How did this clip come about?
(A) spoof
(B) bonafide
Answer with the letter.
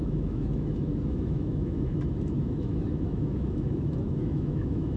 A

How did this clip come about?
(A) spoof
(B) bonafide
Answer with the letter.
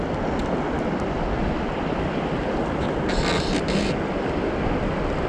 B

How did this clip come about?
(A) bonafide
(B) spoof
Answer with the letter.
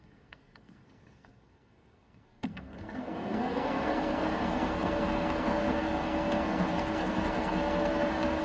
B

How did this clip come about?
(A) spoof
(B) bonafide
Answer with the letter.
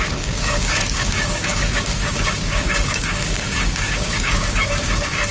A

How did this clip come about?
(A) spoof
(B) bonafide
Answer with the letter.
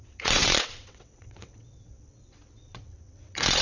A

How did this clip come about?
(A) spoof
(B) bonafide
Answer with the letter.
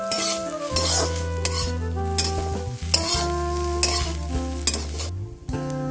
B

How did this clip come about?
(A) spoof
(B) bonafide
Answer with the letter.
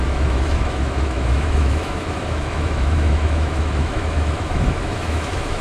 A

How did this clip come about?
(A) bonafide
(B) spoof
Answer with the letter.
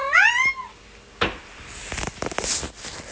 A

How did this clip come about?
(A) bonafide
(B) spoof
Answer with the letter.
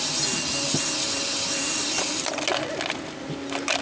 A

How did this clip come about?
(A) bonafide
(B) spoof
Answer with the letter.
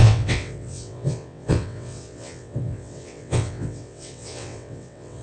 B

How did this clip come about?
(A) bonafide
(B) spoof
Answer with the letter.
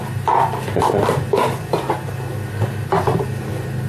A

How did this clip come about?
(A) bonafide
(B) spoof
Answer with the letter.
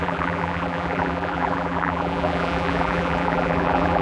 B